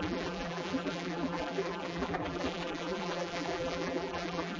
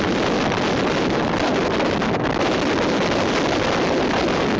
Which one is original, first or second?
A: second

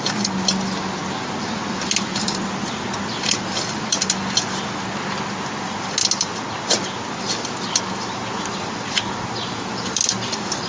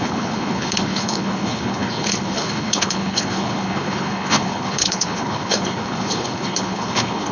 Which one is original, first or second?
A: first